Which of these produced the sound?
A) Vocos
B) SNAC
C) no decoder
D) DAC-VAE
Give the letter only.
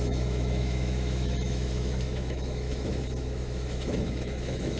D